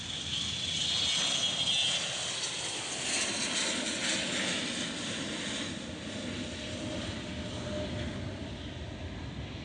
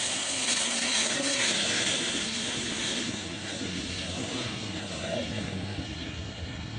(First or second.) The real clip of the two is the first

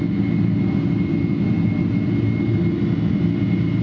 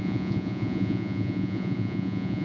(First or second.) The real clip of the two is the first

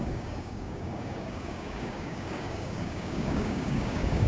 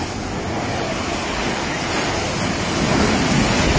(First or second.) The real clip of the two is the second